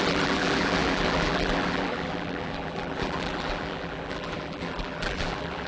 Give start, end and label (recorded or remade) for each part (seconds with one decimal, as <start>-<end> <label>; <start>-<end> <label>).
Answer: 0.0-5.7 remade